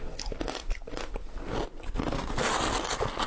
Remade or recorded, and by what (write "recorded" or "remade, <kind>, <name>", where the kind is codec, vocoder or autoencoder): recorded